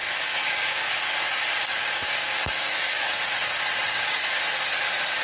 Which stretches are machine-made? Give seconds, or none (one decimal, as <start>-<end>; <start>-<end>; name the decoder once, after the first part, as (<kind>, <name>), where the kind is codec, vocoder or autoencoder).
0.0-3.1 (codec, DAC); 3.9-4.4